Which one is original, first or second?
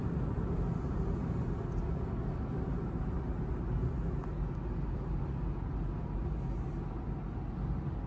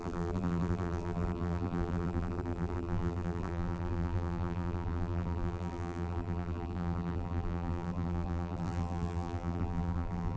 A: first